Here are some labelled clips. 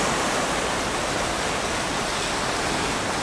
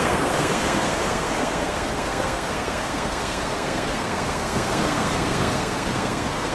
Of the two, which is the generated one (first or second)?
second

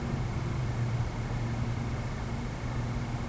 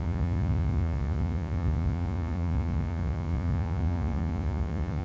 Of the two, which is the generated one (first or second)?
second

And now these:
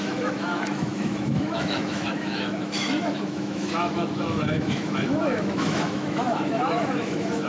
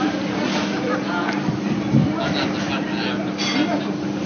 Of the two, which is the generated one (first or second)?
first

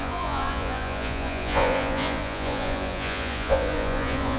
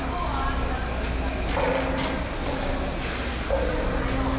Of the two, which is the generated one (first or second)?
first